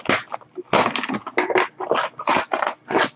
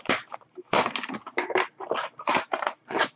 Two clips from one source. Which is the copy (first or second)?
second